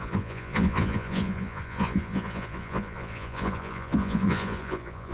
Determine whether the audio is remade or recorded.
remade